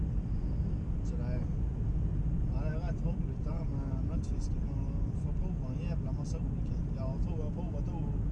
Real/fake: real